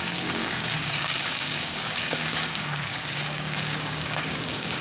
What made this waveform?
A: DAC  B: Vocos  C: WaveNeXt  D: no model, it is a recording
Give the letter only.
A